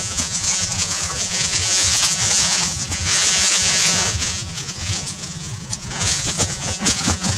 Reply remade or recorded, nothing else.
remade